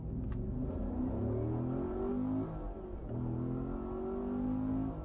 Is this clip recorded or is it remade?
recorded